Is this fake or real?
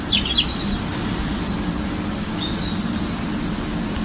real